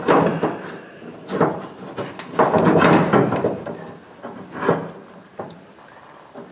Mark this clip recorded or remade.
recorded